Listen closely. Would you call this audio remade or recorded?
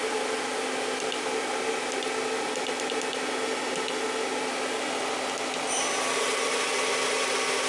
recorded